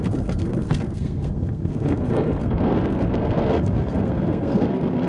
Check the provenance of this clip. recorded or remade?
remade